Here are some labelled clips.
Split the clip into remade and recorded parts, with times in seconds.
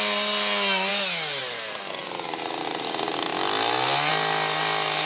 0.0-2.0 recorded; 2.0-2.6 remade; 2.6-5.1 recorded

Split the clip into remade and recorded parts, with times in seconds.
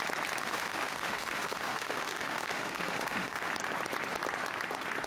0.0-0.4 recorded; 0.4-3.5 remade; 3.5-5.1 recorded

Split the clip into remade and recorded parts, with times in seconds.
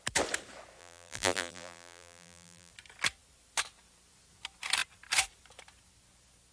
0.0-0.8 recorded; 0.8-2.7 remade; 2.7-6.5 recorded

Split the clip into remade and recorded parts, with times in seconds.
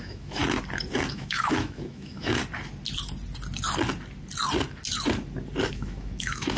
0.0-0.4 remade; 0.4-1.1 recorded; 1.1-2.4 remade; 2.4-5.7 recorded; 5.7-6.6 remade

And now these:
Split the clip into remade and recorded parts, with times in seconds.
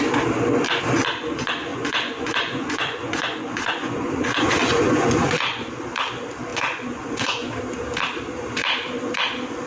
0.0-1.7 recorded; 1.7-5.7 remade; 5.7-6.5 recorded; 6.5-7.5 remade; 7.5-9.7 recorded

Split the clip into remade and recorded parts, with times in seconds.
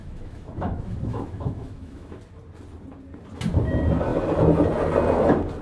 0.0-2.2 remade; 2.2-5.6 recorded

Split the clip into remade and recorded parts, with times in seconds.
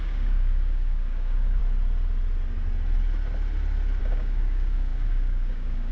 0.0-1.6 remade; 1.6-4.0 recorded; 4.0-5.9 remade